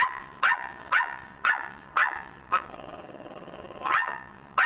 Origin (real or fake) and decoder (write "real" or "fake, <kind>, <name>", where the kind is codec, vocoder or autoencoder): fake, vocoder, WaveNeXt